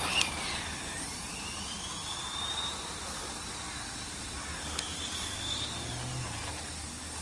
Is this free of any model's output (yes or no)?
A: yes